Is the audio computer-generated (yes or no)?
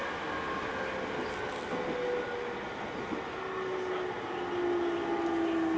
no